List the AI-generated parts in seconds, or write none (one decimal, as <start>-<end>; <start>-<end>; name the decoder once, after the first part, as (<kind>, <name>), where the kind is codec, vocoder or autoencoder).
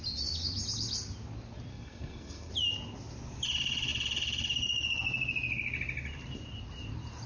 1.7-2.5 (codec, SNAC)